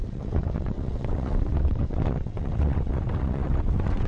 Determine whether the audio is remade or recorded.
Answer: remade